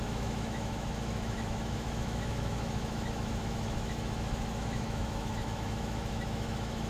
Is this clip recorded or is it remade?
remade